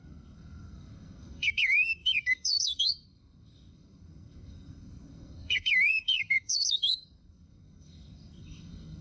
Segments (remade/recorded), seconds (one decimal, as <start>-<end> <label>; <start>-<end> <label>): 0.0-9.0 remade